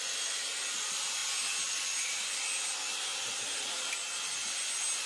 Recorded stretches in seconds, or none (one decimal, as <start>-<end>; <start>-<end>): 0.0-5.1